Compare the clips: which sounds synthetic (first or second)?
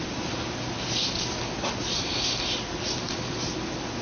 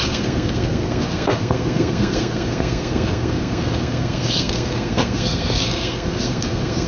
second